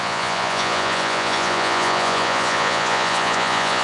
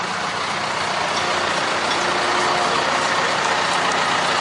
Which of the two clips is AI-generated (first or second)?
first